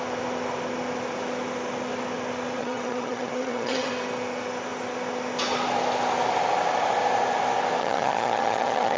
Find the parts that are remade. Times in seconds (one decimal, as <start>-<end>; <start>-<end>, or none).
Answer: 2.6-3.9; 7.8-9.0